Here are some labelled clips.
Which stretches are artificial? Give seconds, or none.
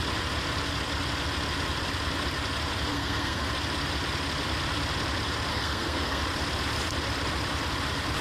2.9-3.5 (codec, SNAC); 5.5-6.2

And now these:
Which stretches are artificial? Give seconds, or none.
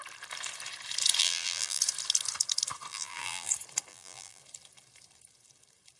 1.2-1.8 (vocoder, BigVGAN v2); 2.9-3.5; 3.9-4.4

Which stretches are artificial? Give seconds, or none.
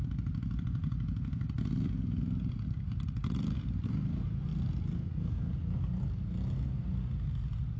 none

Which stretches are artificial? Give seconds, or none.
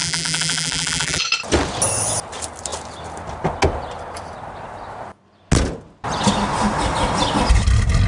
0.0-1.2 (vocoder, BigVGAN v2)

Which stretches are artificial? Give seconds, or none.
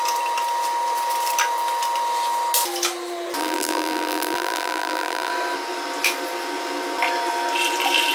3.4-5.3 (vocoder, BigVGAN v2)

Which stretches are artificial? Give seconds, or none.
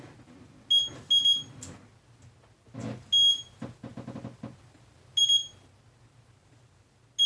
none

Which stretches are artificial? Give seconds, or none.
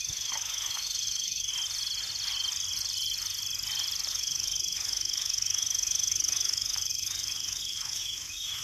0.0-1.5 (autoencoder, DAC-VAE); 4.1-8.6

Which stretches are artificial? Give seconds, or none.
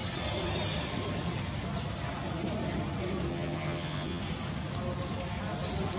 3.3-4.2 (vocoder, HiFi-GAN)